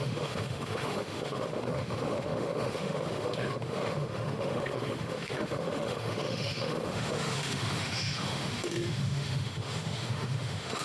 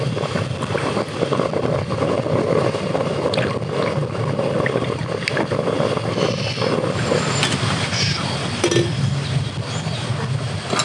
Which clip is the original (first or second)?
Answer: second